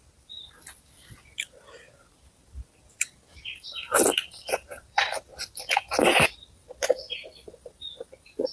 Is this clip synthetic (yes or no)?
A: yes